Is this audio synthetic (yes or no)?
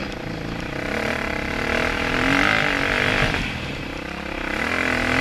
no